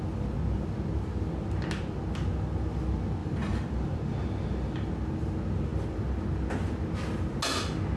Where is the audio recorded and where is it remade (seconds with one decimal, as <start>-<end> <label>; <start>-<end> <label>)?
0.0-3.2 recorded; 3.2-4.9 remade; 4.9-8.0 recorded